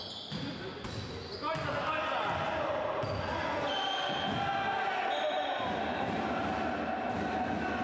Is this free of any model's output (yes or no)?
yes